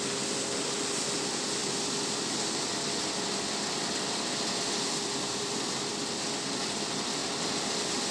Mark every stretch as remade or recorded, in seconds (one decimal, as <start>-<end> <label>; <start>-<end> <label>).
0.0-8.1 recorded